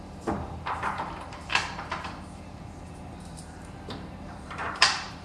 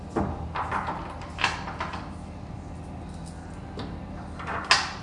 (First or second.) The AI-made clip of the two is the first